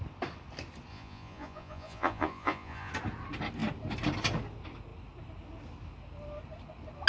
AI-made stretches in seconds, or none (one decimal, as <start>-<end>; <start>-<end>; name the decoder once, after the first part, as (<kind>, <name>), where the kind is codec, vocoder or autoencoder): 0.9-2.9 (vocoder, Vocos)